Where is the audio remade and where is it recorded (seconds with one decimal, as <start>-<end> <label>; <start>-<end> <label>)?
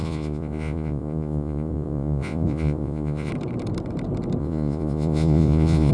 0.0-3.3 remade; 3.3-4.4 recorded; 4.4-5.9 remade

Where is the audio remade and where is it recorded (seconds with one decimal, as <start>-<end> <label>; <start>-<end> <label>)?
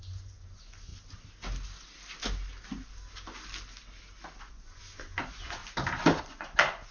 0.0-0.9 remade; 0.9-4.4 recorded; 4.4-5.6 remade; 5.6-6.2 recorded; 6.2-6.9 remade